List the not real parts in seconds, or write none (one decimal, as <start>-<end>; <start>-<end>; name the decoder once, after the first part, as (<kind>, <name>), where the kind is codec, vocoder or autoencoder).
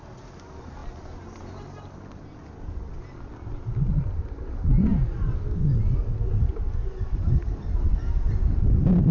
none